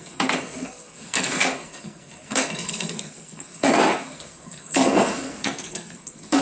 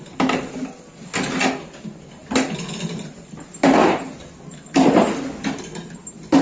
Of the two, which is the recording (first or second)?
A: second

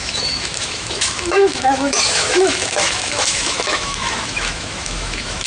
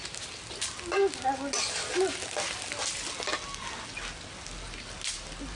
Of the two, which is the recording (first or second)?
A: second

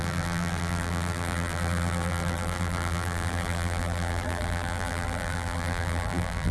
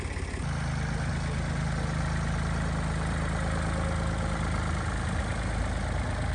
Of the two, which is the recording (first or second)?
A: second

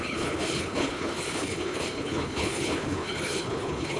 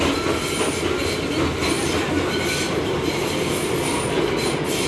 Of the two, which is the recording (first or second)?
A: second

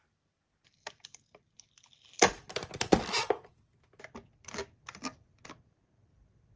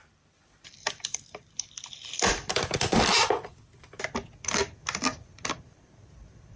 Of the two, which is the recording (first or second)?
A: first